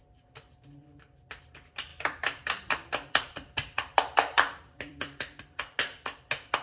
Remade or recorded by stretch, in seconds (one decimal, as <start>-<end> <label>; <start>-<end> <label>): 0.0-1.9 recorded; 1.9-5.8 remade; 5.8-6.6 recorded